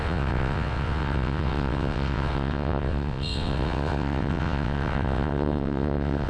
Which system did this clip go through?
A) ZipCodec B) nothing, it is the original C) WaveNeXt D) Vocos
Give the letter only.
C